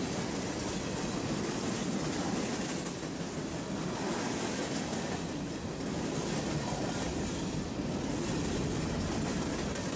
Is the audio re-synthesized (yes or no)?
no